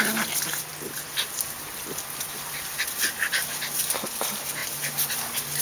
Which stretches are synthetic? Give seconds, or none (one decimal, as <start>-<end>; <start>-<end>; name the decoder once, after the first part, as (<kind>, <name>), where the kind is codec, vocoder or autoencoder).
none